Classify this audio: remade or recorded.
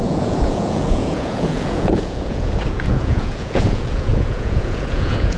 remade